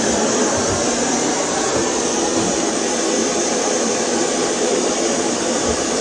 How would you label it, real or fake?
fake